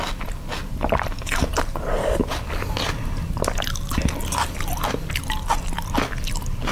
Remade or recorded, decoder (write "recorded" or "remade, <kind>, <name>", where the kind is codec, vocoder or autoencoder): recorded